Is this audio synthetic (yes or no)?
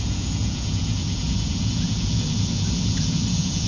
yes